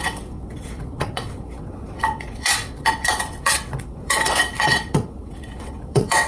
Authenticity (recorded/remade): remade